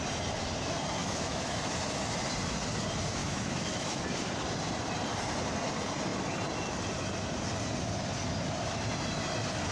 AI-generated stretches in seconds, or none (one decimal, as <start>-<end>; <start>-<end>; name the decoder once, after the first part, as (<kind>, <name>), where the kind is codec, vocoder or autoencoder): 1.0-1.6 (autoencoder, DAC-VAE); 3.2-4.0